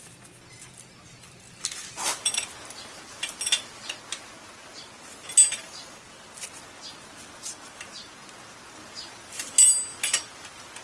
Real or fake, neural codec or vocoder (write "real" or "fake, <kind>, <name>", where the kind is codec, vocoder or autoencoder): real